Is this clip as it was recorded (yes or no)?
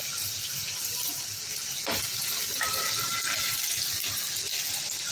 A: yes